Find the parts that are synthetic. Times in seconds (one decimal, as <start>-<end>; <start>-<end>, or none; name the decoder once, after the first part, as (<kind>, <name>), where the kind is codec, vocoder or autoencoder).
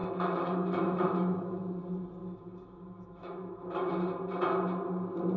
0.0-1.6 (autoencoder, DAC-VAE); 2.2-3.9